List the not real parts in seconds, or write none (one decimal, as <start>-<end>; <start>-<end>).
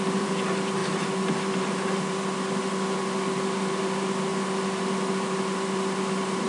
0.0-4.3; 5.1-6.5